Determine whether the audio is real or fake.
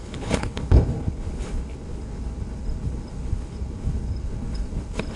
fake